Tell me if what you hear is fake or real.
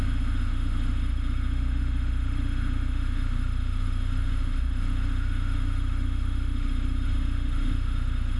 fake